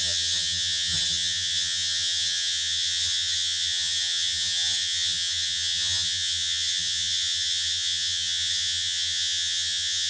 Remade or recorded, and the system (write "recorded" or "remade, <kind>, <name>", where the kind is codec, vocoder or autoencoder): remade, vocoder, HiFi-GAN